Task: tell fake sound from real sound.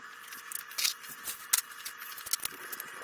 real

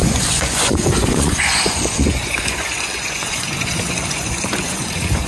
fake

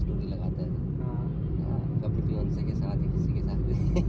real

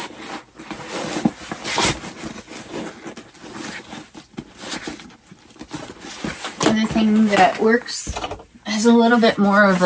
real